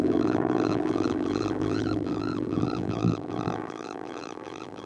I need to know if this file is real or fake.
fake